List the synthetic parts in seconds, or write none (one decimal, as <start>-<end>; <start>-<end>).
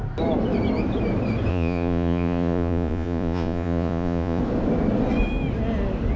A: 1.5-4.4